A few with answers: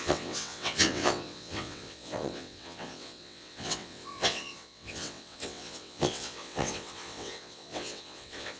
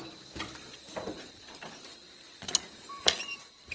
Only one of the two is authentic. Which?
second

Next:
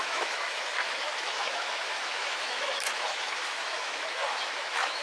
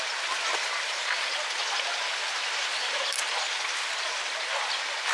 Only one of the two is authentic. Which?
second